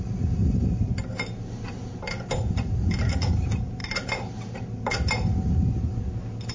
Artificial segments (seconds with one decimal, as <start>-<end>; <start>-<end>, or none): 0.4-0.9